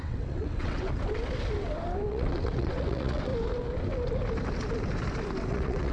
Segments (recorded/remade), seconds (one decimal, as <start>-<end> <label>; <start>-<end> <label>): 0.0-0.9 remade; 0.9-2.1 recorded; 2.1-3.3 remade; 3.3-5.5 recorded; 5.5-5.9 remade